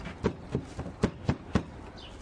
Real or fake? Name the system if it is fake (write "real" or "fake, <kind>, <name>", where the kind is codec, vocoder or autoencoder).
real